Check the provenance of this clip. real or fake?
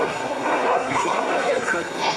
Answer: fake